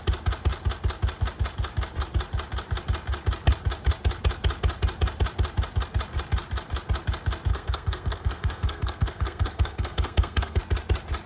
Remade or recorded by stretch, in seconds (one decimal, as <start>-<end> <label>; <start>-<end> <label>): 0.0-7.5 recorded; 7.5-10.6 remade; 10.6-11.3 recorded